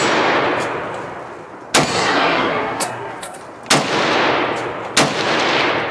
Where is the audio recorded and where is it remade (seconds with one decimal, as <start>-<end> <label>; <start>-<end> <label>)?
0.0-1.9 recorded; 1.9-3.4 remade; 3.4-5.9 recorded

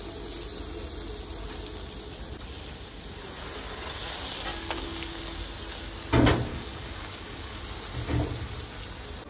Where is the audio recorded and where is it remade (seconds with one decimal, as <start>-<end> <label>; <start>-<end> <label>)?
0.0-4.5 recorded; 4.5-5.2 remade; 5.2-6.5 recorded; 6.5-7.6 remade; 7.6-9.3 recorded

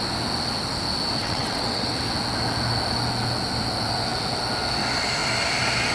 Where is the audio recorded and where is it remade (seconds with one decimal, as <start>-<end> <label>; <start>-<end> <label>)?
0.0-1.2 recorded; 1.2-2.0 remade; 2.0-5.9 recorded

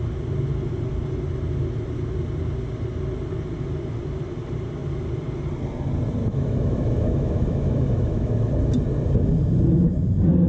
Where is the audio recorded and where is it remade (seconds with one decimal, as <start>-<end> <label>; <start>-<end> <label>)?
0.0-6.2 recorded; 6.2-8.5 remade; 8.5-10.5 recorded

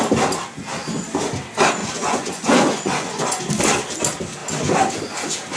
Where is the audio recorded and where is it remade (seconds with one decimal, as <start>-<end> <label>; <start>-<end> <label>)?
0.0-1.8 recorded; 1.8-3.4 remade; 3.4-5.6 recorded

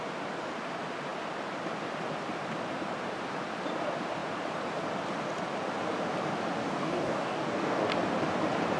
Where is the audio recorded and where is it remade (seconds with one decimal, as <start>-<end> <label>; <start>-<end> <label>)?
0.0-6.6 recorded; 6.6-7.8 remade; 7.8-8.8 recorded

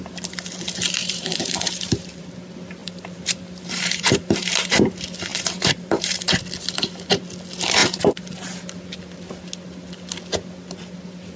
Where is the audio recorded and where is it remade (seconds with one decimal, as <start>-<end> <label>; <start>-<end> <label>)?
0.0-1.0 recorded; 1.0-2.2 remade; 2.2-2.8 recorded; 2.8-4.8 remade; 4.8-5.3 recorded; 5.3-6.4 remade; 6.4-7.8 recorded; 7.8-8.6 remade; 8.6-11.4 recorded

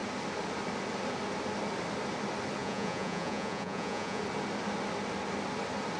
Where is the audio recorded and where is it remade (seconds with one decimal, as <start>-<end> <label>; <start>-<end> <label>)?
0.0-2.6 recorded; 2.6-4.2 remade; 4.2-6.0 recorded